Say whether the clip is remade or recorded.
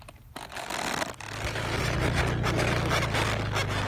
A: recorded